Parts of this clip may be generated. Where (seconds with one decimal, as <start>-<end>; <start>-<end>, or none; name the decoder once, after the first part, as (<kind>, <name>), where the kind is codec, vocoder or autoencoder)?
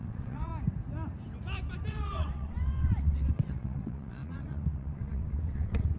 0.0-0.5 (vocoder, WaveNeXt); 1.9-6.0